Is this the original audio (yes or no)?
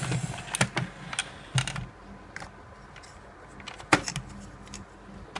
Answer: yes